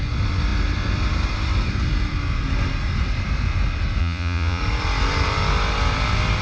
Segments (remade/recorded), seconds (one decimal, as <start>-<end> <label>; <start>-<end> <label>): 0.0-4.0 recorded; 4.0-4.6 remade; 4.6-6.4 recorded